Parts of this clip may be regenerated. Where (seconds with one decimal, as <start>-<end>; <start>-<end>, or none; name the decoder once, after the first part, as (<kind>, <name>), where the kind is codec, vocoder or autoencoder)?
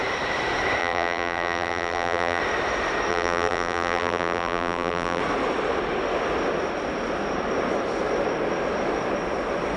0.8-2.4 (vocoder, BigVGAN v2); 3.1-5.2